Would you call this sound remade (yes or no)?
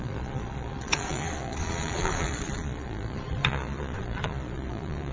yes